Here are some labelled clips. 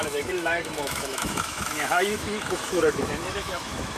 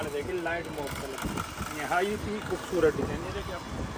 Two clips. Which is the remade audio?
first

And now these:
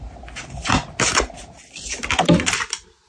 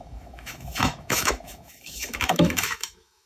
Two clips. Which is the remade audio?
second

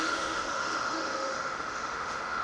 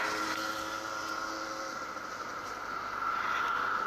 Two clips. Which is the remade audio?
first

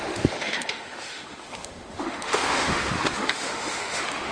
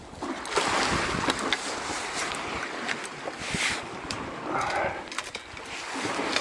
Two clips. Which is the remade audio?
first